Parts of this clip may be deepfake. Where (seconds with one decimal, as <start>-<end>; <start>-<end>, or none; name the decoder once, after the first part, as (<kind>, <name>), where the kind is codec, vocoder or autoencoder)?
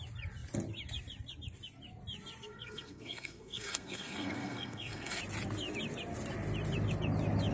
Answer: 2.5-5.2 (codec, SNAC)